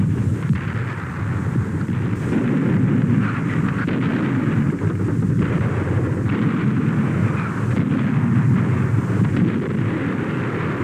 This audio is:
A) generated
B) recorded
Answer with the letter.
B